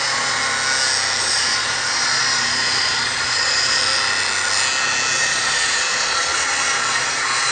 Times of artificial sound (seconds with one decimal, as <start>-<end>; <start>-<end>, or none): 0.0-0.4; 1.2-3.8; 5.2-7.5